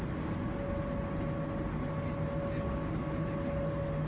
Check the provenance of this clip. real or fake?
real